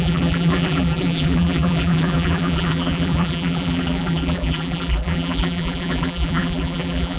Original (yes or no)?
no